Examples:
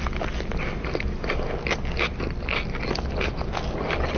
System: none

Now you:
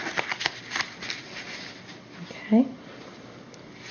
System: none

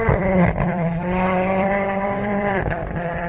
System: vocoder, BigVGAN v2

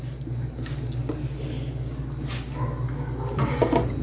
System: none